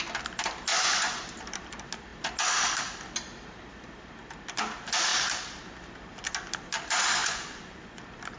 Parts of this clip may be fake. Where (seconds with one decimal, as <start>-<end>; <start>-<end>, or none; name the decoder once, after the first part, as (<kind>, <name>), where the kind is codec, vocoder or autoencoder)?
0.7-1.2 (vocoder, Vocos); 7.2-8.0

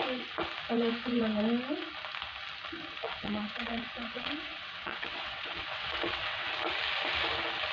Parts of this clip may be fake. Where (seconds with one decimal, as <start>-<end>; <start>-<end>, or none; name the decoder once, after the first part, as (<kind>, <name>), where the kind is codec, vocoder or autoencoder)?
0.7-1.2 (vocoder, WaveNeXt); 3.0-6.5

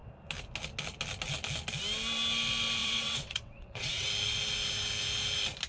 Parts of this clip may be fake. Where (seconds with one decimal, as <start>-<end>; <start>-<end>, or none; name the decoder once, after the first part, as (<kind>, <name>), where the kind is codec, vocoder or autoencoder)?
2.8-4.1 (vocoder, WaveNeXt)

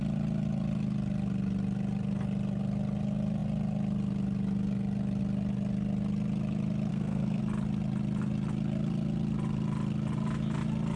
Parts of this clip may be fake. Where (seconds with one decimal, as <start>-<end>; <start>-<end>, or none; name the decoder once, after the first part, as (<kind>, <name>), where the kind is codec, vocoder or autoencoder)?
6.9-7.4 (codec, SNAC)

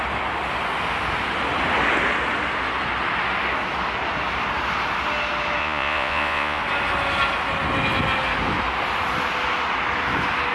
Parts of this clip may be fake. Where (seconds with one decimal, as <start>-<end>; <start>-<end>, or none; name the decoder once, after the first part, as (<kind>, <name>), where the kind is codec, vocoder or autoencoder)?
5.6-6.6 (vocoder, Vocos)

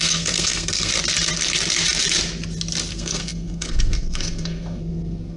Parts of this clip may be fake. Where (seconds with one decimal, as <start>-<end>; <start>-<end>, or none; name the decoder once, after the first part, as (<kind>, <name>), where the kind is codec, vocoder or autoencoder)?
0.0-0.9 (codec, SNAC); 2.9-5.4

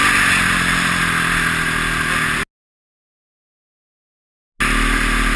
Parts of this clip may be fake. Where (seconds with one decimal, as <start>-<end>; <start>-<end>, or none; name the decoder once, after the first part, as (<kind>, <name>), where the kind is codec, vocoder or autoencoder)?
none